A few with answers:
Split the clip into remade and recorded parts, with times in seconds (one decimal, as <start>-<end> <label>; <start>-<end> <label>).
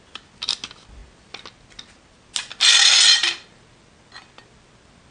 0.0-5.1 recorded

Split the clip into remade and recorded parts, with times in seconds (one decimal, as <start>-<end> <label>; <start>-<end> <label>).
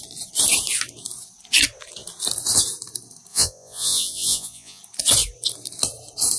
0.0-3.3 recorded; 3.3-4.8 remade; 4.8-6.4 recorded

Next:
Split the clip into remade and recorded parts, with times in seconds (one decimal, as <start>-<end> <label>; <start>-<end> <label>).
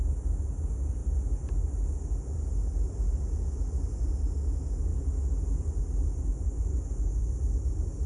0.0-6.3 recorded; 6.3-7.3 remade; 7.3-8.1 recorded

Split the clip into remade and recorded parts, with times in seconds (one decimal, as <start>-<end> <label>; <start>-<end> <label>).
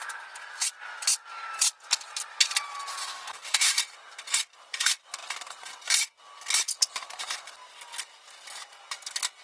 0.0-3.0 recorded; 3.0-3.7 remade; 3.7-9.4 recorded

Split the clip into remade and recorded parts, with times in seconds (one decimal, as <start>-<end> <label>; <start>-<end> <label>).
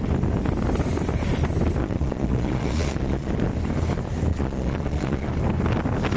0.0-1.8 recorded; 1.8-3.3 remade; 3.3-4.3 recorded; 4.3-5.3 remade; 5.3-6.2 recorded